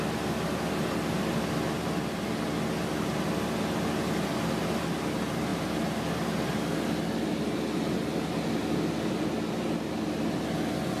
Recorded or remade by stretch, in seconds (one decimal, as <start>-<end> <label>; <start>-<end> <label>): 0.0-11.0 recorded